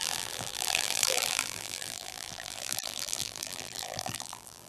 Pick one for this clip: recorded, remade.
remade